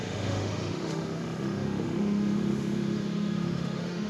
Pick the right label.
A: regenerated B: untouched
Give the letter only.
A